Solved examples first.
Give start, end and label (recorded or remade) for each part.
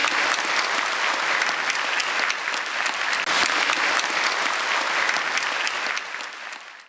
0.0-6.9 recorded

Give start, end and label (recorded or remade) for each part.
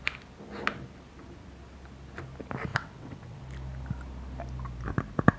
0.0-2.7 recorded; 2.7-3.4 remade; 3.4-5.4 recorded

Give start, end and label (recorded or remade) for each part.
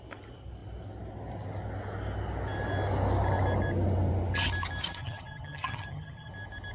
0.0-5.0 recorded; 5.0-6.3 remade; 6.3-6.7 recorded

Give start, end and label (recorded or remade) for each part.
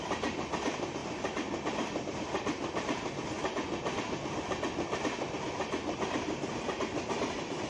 0.0-7.7 recorded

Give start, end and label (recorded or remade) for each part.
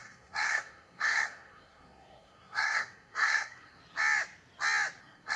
0.0-3.8 remade; 3.8-5.0 recorded; 5.0-5.4 remade